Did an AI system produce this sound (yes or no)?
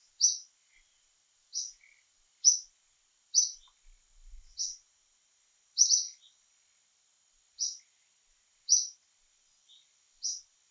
no